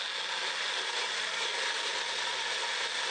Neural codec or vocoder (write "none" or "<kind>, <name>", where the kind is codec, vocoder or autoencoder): none